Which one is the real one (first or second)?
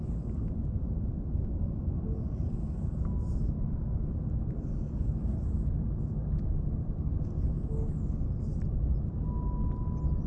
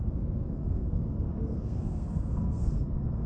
first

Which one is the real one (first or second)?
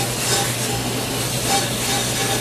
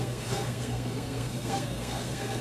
first